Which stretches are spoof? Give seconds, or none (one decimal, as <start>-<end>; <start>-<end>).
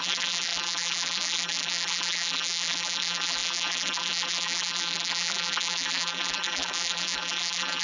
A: 0.0-7.8